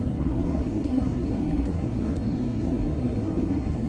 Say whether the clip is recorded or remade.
remade